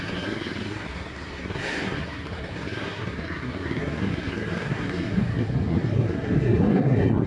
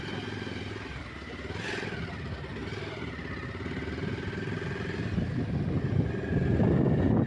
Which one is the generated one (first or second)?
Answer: first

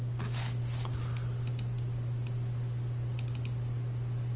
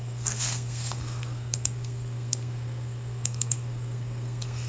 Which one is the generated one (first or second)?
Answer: second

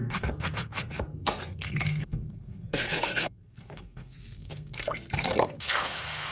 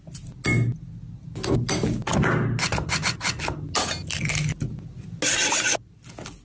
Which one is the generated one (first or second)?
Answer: first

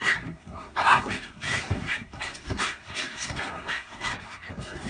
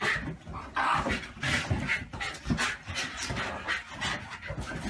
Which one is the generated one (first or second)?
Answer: first